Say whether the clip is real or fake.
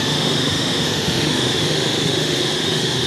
fake